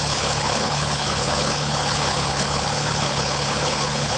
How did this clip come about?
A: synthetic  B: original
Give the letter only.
A